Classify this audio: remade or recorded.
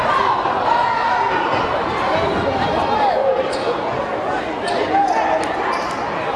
recorded